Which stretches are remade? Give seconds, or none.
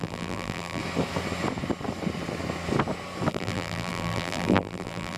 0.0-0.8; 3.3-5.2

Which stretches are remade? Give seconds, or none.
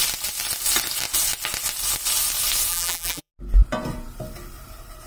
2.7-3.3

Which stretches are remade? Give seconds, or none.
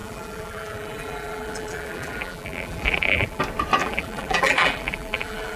0.0-3.4; 3.8-5.6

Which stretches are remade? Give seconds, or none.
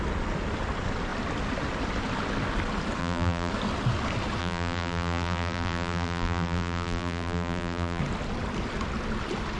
3.0-3.5; 4.4-8.0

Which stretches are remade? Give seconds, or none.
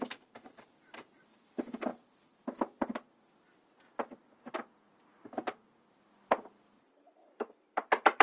0.0-1.9; 6.8-8.2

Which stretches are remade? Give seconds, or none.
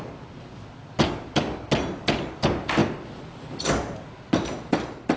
none